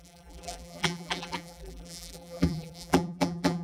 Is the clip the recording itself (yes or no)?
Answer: no